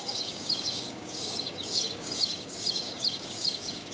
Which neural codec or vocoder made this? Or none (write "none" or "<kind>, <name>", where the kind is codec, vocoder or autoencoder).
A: codec, DAC